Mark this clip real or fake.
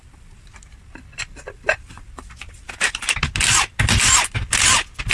fake